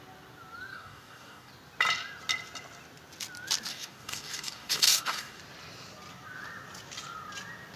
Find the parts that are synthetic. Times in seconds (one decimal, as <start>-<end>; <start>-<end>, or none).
0.7-1.5; 3.7-5.4